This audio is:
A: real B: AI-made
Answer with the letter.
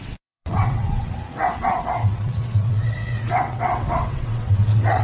B